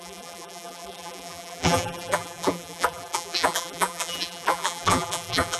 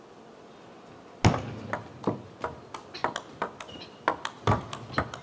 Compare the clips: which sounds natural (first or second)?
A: second